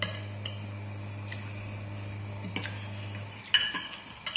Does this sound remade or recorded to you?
recorded